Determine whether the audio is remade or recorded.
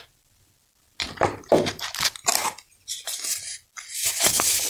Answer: recorded